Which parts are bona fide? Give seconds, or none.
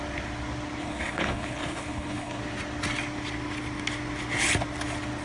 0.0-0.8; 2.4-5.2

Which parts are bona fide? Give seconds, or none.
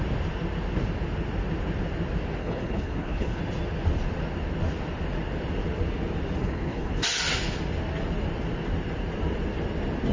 0.0-2.4; 3.4-6.4; 6.9-10.1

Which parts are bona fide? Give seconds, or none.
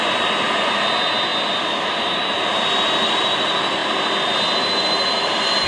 0.0-5.7